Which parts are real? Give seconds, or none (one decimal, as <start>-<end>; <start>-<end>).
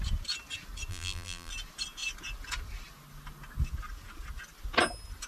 0.0-0.9; 1.5-5.3